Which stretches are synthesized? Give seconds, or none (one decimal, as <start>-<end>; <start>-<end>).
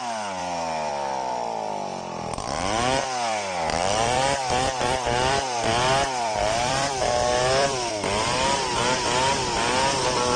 0.4-0.9; 3.0-7.9